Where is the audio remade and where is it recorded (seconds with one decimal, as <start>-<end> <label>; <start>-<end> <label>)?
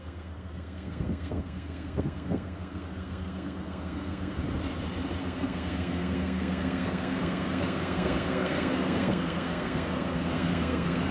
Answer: 0.0-4.4 remade; 4.4-5.2 recorded; 5.2-11.1 remade